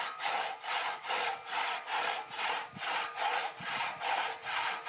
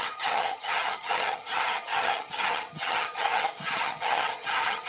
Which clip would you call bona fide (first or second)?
first